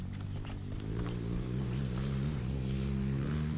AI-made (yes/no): no